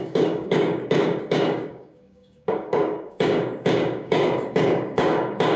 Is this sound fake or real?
fake